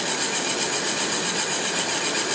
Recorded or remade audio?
recorded